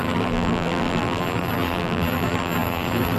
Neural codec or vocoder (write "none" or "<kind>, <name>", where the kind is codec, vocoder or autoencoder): vocoder, BigVGAN v2